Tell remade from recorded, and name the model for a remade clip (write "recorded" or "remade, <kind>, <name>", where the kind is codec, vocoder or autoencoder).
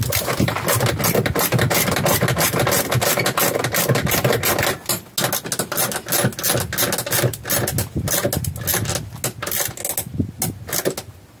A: recorded